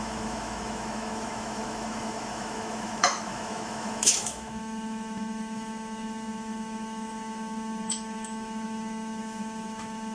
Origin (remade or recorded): remade